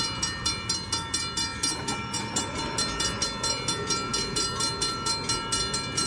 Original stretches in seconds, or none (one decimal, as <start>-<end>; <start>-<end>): 0.0-6.1